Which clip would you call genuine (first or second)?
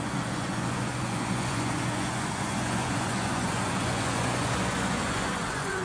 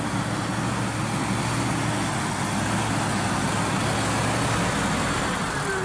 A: second